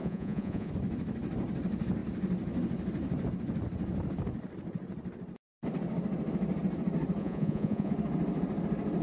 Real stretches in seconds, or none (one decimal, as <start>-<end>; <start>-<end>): 0.7-7.2; 7.9-9.0